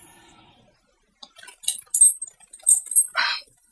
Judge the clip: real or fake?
real